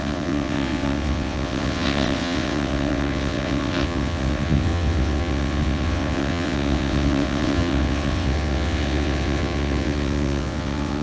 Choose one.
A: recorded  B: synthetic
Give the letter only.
B